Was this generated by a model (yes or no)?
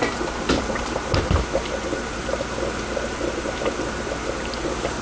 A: no